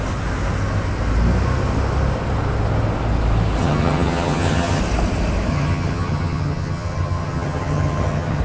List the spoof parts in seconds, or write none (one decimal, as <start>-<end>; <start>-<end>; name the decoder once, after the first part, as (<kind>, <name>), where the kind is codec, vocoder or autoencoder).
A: 3.6-4.8 (vocoder, HiFi-GAN); 5.5-8.4